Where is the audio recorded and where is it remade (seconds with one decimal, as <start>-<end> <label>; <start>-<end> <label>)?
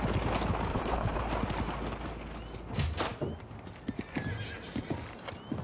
0.0-0.7 recorded; 0.7-1.2 remade; 1.2-5.6 recorded